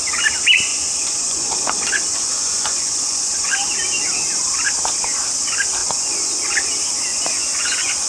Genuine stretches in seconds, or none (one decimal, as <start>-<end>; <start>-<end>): 0.0-0.7; 3.5-5.8; 6.4-7.1